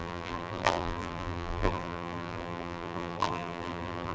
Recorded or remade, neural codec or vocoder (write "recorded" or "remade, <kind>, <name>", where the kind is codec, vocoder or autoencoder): remade, vocoder, BigVGAN v2